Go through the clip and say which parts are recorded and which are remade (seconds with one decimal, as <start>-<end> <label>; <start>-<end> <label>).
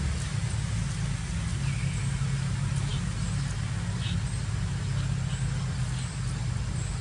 0.0-7.0 recorded